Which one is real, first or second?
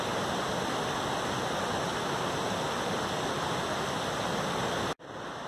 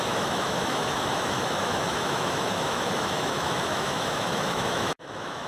first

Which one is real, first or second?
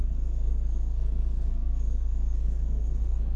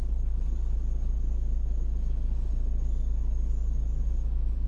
second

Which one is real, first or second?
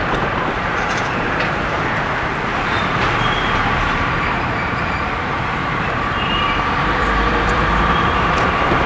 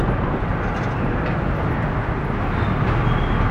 second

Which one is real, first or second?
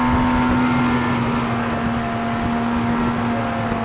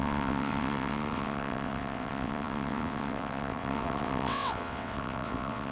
first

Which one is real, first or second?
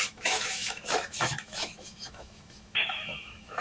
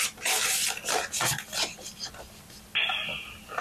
second